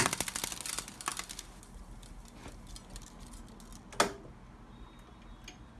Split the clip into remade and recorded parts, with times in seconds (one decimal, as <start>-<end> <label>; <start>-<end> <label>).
0.0-5.8 recorded